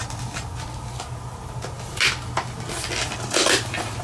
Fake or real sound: real